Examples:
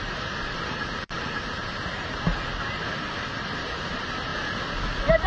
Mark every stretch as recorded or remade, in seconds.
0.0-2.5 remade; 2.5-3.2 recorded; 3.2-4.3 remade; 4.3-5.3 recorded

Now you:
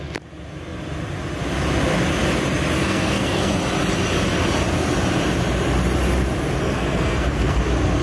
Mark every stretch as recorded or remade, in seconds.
0.0-2.8 recorded; 2.8-3.5 remade; 3.5-6.6 recorded; 6.6-7.6 remade; 7.6-8.0 recorded

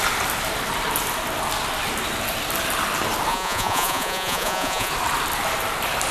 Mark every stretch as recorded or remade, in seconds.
0.0-3.3 recorded; 3.3-4.9 remade; 4.9-6.1 recorded